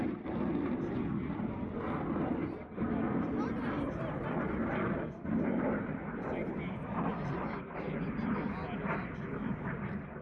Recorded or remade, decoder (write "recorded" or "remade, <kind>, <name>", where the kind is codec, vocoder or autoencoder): remade, vocoder, BigVGAN v2